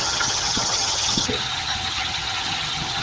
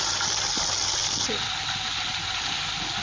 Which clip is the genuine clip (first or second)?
second